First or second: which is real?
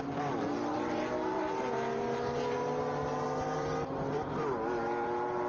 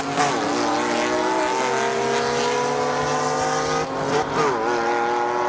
second